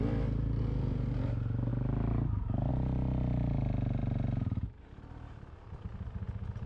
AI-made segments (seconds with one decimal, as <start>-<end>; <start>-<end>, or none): none

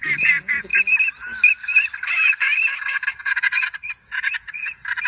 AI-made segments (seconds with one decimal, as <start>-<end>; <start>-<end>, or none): 0.0-0.7; 3.2-4.6

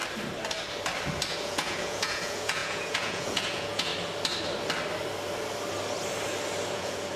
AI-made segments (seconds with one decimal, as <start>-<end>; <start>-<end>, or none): 1.3-3.9; 6.7-7.2